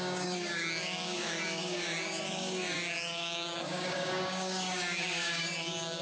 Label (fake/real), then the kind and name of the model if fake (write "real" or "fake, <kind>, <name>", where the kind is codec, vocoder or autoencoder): fake, codec, DAC